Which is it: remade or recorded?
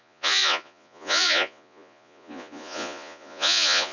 remade